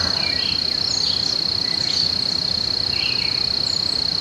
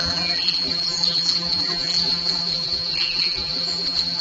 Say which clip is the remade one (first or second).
second